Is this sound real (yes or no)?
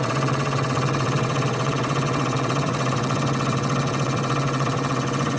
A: no